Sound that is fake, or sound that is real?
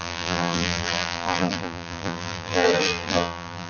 fake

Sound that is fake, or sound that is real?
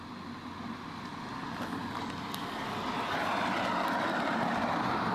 fake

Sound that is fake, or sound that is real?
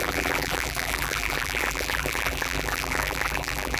fake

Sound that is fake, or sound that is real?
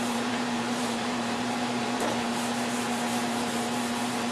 fake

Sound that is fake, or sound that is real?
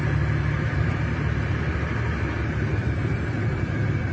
fake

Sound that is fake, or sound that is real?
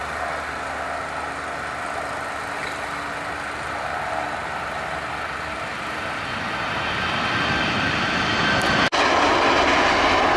real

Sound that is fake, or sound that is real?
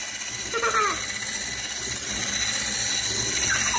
real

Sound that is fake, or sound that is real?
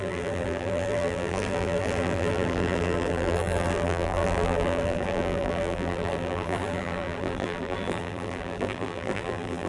fake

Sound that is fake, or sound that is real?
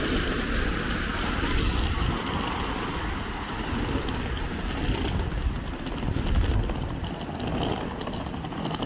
real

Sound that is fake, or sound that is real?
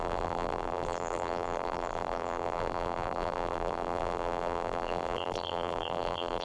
fake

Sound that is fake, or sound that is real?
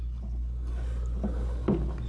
real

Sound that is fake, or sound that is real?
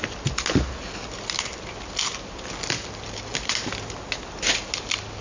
real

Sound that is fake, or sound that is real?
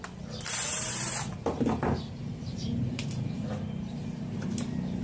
fake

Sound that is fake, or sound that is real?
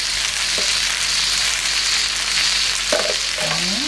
real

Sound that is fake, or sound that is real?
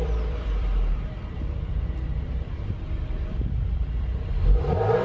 fake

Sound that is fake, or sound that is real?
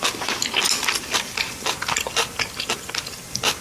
real